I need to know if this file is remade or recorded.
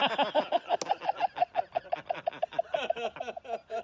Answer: recorded